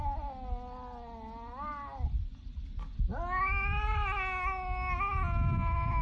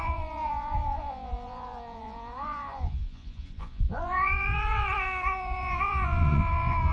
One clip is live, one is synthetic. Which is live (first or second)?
first